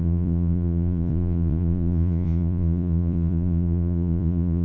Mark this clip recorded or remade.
remade